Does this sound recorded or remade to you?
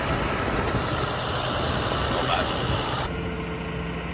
recorded